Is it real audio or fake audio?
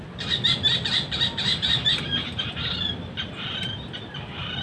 real